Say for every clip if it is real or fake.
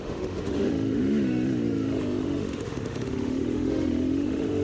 fake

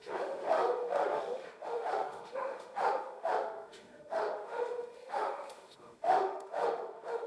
fake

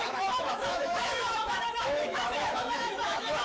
fake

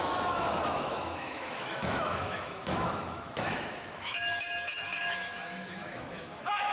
fake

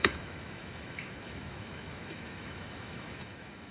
fake